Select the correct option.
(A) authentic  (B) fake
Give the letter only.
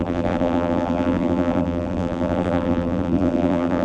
B